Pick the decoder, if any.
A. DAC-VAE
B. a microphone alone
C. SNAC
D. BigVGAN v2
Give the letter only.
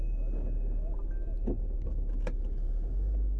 B